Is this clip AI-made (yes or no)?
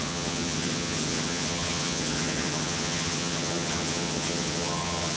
yes